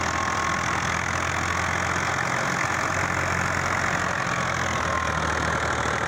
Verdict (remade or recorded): recorded